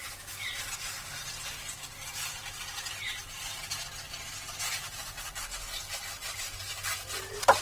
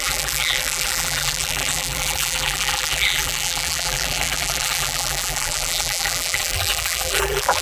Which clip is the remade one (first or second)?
second